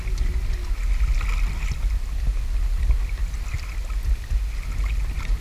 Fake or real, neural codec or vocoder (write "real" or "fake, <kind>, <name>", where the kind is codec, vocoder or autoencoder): real